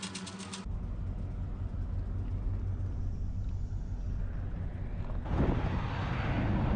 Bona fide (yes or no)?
yes